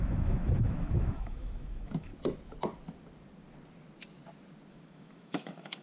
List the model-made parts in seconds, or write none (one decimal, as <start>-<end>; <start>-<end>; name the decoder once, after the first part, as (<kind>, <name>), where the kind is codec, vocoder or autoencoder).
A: 0.0-2.1 (autoencoder, DAC-VAE); 4.7-5.8